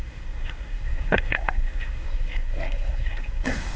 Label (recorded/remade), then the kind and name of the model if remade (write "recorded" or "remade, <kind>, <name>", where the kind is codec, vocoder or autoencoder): remade, codec, SNAC